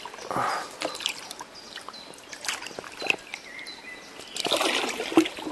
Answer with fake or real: real